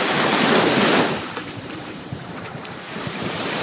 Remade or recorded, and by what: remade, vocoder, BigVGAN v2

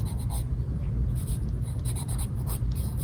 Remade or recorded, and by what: remade, vocoder, BigVGAN v2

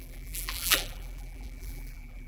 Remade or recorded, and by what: remade, vocoder, BigVGAN v2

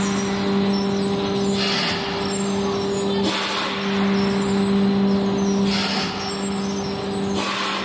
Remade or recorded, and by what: recorded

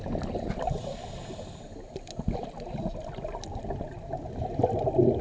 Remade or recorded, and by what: recorded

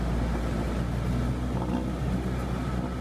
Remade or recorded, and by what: recorded